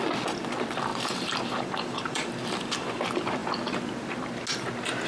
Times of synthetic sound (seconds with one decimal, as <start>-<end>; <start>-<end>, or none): 0.9-3.0; 3.4-3.9